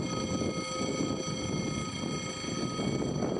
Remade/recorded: recorded